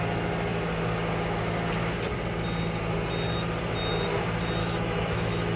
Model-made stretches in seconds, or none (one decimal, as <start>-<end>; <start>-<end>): 4.6-5.6